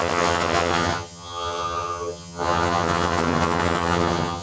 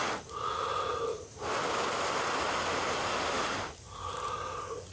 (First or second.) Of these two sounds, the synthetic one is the first